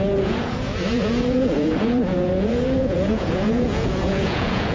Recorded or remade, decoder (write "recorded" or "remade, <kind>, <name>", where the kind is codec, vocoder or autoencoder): remade, vocoder, Vocos